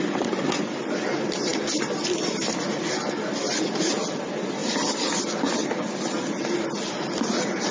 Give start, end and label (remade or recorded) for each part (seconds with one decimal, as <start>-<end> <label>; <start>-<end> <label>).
0.0-7.7 recorded